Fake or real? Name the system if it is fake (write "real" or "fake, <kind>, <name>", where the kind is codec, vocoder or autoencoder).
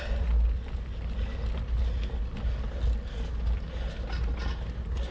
real